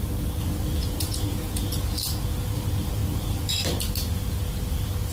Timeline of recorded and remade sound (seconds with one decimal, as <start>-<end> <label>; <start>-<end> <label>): 0.0-0.8 recorded; 0.8-1.6 remade; 1.6-5.1 recorded